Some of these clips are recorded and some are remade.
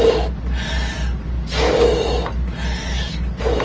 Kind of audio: recorded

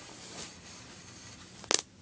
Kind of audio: recorded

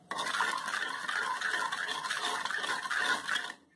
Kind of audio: recorded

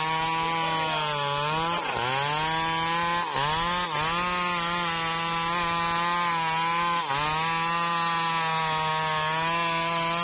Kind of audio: recorded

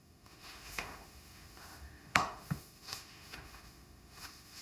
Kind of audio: remade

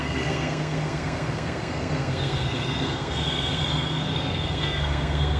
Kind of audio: remade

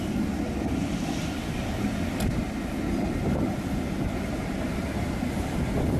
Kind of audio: recorded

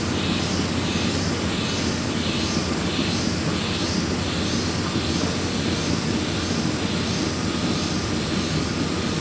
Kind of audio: recorded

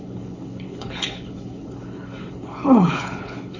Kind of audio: remade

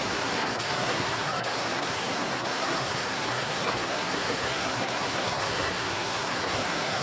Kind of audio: remade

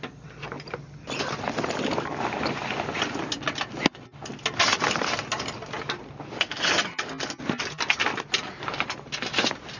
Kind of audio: recorded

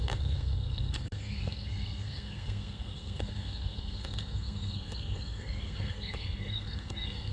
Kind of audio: remade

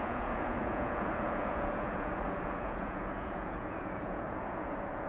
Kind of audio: remade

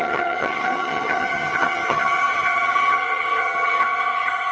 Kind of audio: remade